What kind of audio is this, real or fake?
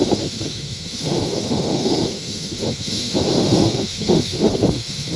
fake